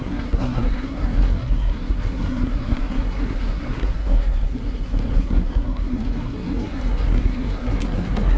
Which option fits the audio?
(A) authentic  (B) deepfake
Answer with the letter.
B